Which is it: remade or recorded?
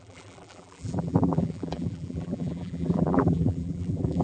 remade